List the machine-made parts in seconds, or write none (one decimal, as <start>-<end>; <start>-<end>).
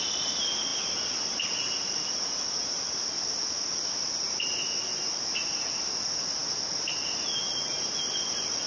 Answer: none